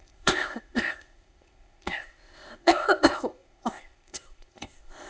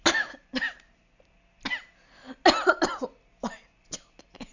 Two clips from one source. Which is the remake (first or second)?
first